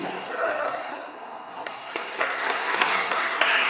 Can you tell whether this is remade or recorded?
remade